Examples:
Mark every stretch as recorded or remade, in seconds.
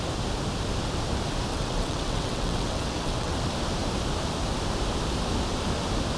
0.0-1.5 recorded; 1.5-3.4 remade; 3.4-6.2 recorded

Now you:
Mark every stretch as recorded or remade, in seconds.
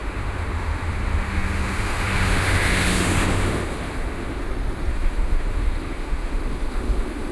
0.0-4.4 remade; 4.4-4.9 recorded; 4.9-7.3 remade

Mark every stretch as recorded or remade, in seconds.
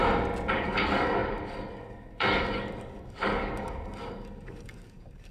0.0-0.5 recorded; 0.5-5.3 remade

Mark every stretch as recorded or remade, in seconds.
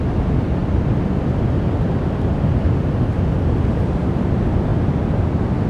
0.0-5.7 recorded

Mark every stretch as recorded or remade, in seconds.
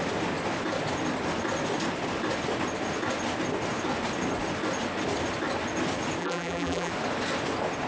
0.0-6.2 recorded; 6.2-6.9 remade; 6.9-7.9 recorded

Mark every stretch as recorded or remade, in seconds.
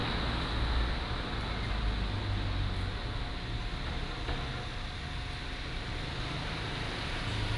0.0-7.6 recorded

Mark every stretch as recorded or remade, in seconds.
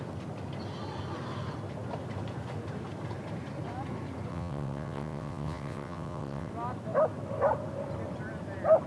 0.0-4.3 recorded; 4.3-6.5 remade; 6.5-8.9 recorded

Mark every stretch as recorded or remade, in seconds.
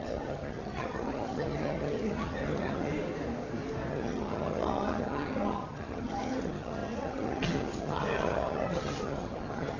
0.0-2.9 remade; 2.9-3.9 recorded; 3.9-9.8 remade